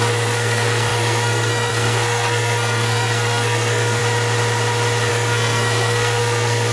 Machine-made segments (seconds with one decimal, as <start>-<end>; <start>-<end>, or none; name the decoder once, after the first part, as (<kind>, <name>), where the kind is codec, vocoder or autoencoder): 0.0-4.0 (codec, SNAC); 5.1-6.7